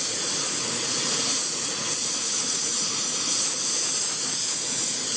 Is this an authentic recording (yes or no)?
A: no